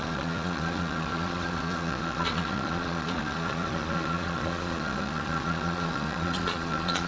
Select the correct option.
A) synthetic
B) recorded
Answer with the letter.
A